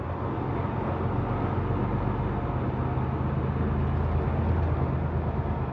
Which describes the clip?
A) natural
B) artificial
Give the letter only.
A